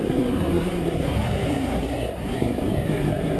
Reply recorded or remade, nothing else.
remade